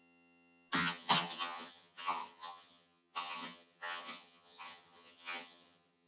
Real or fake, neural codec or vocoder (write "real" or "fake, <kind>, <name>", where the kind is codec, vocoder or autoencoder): fake, vocoder, HiFi-GAN